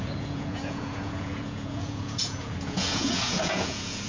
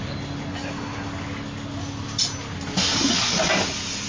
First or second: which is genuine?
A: second